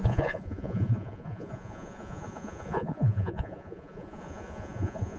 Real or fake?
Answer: fake